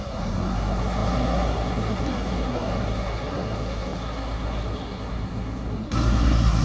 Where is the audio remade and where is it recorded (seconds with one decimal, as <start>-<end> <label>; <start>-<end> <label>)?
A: 0.0-6.6 remade